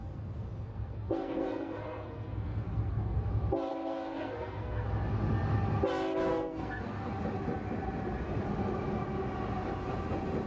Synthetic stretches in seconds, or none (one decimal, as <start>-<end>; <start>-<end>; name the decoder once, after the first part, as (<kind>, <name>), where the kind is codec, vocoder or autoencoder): 0.0-3.3 (codec, SNAC); 3.7-4.9; 6.3-7.1